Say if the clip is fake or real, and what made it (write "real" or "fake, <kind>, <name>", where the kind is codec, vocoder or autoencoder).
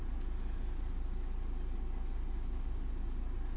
real